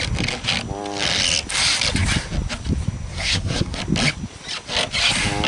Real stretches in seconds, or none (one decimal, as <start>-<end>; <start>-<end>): 0.0-3.1; 3.8-5.5

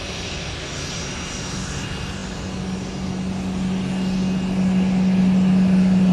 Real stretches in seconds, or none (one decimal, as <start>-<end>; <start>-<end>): 0.0-6.1

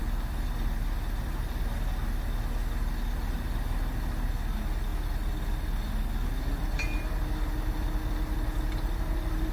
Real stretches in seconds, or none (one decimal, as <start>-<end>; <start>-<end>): 0.0-9.5

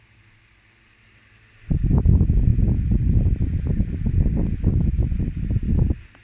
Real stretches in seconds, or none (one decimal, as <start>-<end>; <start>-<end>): 0.0-6.2

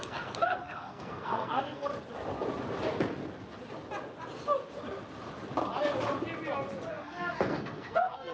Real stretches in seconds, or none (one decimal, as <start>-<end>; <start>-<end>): 1.9-6.9

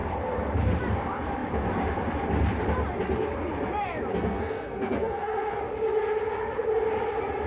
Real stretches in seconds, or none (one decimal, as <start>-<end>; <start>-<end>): 0.0-4.1; 5.6-7.5